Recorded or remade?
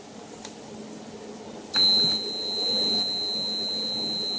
recorded